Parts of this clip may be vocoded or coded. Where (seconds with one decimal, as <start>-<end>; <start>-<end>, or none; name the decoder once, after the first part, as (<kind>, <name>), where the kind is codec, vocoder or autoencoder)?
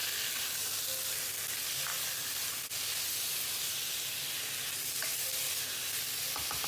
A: none